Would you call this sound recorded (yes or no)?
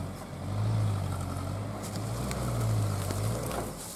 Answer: yes